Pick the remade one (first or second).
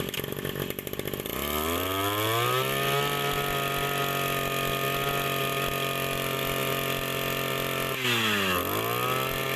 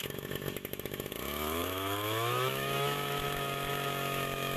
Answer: second